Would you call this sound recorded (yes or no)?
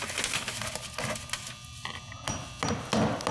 yes